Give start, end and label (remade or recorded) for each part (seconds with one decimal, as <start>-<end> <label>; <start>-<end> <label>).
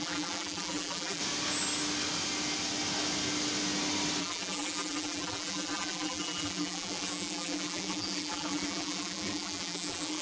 0.0-1.2 remade; 1.2-4.2 recorded; 4.2-10.2 remade